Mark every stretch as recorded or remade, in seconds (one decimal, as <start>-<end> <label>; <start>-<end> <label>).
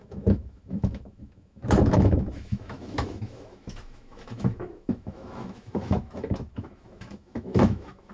0.0-8.1 remade